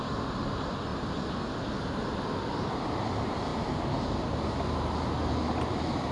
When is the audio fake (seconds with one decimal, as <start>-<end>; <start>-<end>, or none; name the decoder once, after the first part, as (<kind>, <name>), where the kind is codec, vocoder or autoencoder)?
none